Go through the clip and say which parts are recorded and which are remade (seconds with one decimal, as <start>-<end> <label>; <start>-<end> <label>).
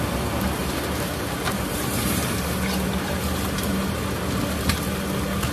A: 0.0-0.6 recorded; 0.6-3.9 remade; 3.9-5.5 recorded